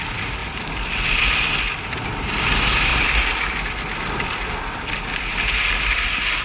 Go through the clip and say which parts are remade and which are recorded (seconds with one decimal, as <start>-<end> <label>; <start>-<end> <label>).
0.0-6.4 recorded